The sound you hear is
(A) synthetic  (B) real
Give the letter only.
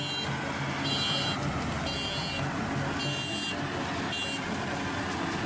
B